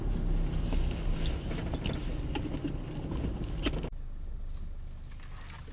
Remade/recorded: recorded